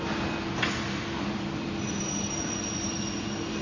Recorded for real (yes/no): yes